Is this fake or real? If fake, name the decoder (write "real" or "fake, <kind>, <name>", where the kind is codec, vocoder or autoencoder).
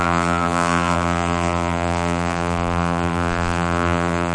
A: fake, vocoder, BigVGAN v2